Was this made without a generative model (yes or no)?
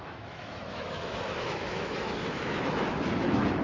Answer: no